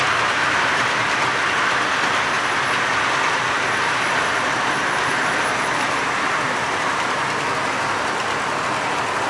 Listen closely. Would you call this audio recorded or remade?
recorded